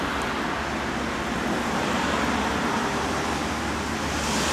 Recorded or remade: recorded